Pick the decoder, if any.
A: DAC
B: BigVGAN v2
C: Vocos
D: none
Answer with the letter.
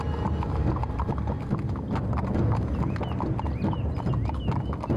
D